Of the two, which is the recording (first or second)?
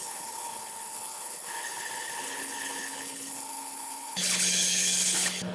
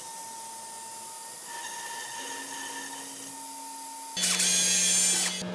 second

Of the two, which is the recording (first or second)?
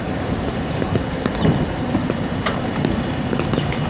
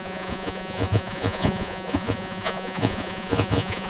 first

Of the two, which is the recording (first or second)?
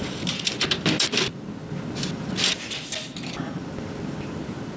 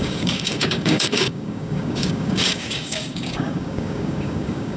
first